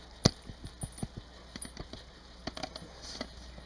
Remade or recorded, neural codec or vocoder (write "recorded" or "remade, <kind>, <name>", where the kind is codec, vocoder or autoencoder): recorded